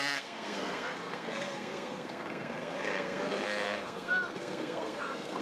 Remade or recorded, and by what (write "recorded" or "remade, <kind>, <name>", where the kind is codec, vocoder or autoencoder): remade, codec, SNAC